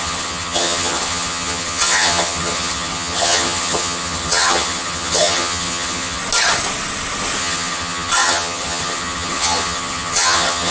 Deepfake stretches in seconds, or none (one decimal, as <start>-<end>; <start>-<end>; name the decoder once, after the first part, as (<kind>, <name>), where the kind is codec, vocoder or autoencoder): 0.0-6.2 (vocoder, HiFi-GAN); 7.4-10.7